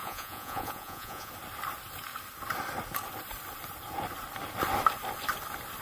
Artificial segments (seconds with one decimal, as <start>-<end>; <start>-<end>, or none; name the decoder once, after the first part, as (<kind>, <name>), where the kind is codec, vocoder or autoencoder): 0.0-1.3 (vocoder, Vocos)